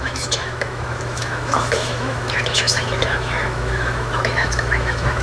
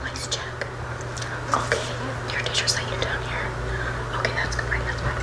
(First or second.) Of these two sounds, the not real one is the first